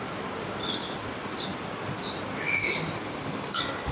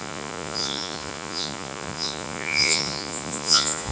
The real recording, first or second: first